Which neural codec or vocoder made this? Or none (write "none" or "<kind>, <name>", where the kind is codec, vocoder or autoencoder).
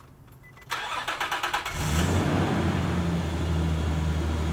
none